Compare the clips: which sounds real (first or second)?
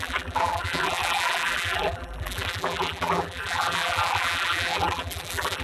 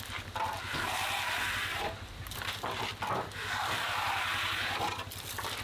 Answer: second